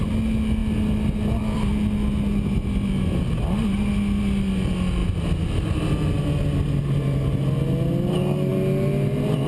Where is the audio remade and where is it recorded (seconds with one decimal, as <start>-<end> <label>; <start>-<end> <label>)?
0.0-9.5 recorded